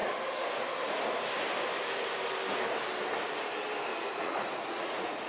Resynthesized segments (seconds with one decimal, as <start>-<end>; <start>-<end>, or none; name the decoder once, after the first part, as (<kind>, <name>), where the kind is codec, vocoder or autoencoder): 3.9-5.3 (vocoder, Vocos)